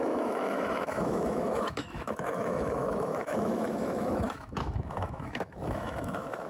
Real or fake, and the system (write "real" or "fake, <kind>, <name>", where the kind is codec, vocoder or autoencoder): fake, autoencoder, DAC-VAE